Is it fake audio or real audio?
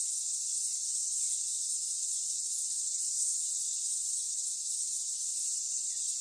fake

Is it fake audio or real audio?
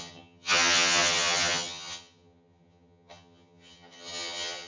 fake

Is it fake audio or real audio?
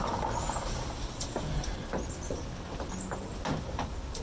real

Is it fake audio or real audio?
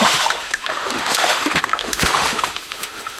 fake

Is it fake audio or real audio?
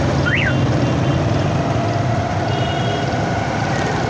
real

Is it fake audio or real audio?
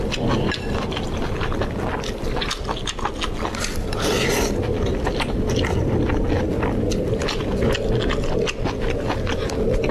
real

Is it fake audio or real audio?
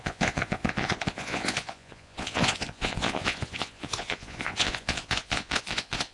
fake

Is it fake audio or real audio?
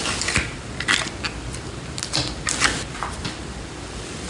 fake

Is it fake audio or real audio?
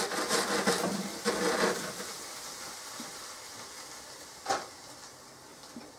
real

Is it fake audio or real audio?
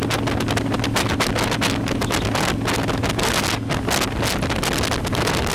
real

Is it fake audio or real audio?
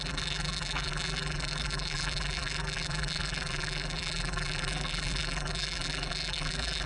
fake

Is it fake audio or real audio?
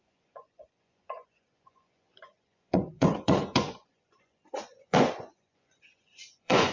fake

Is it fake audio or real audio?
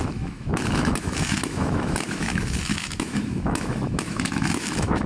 fake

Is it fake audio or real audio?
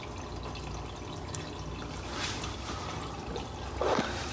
real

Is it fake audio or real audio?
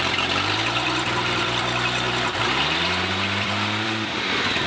fake